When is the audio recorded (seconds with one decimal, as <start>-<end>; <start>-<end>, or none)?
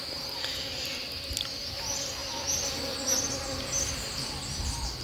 0.0-5.0